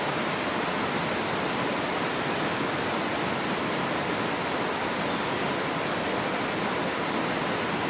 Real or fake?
real